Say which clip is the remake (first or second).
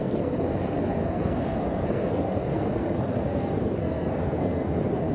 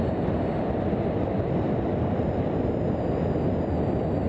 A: first